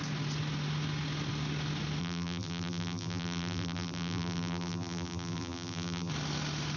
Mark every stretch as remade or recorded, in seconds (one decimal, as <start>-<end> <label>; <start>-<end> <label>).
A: 0.0-2.0 recorded; 2.0-6.1 remade; 6.1-6.8 recorded